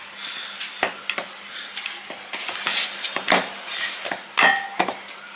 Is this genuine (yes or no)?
yes